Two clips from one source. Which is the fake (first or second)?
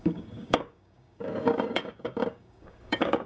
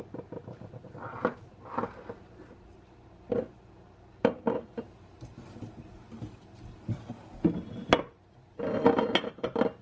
first